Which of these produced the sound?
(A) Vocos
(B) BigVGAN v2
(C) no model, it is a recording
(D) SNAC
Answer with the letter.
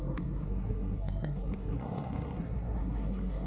D